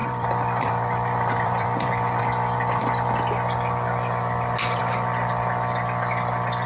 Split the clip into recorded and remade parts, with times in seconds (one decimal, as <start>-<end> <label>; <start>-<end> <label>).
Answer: 0.0-2.2 remade; 2.2-6.7 recorded